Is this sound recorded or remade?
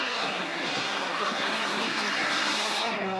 remade